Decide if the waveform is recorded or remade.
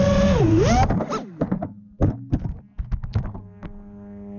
recorded